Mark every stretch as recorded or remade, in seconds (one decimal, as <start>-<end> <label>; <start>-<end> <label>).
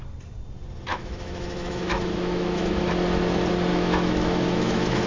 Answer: 0.0-0.9 recorded; 0.9-2.9 remade; 2.9-3.7 recorded; 3.7-5.1 remade